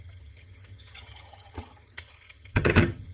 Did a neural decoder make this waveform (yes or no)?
yes